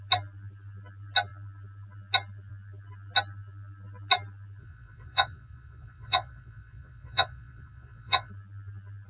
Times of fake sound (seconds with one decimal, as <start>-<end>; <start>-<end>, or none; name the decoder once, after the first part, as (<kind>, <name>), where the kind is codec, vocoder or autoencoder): 4.6-8.3 (vocoder, Vocos)